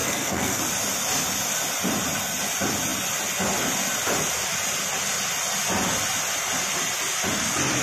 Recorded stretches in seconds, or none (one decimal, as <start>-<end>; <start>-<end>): 0.6-7.8